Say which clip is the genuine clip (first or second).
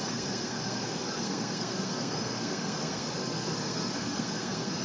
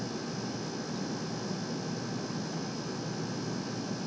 second